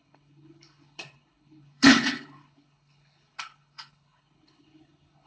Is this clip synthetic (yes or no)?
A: yes